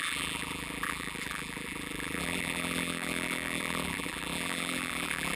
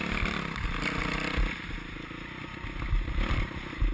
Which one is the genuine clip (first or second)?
second